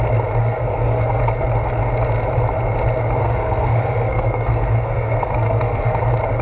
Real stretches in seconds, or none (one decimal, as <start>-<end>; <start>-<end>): 0.0-0.4; 1.2-3.2; 6.0-6.4